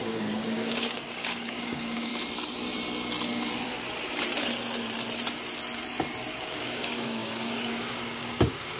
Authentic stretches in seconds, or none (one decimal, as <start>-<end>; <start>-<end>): 2.1-6.4